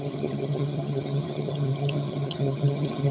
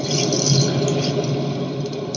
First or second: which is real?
second